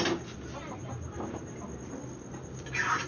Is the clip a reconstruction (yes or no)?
no